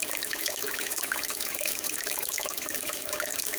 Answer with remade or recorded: remade